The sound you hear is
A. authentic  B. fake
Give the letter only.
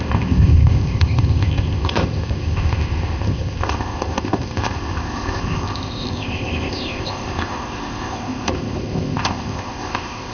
B